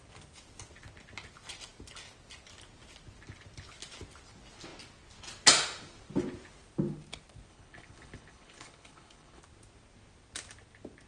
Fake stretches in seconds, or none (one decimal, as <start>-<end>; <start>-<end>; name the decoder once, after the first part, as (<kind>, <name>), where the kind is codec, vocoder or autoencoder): 7.5-9.4 (codec, HILCodec)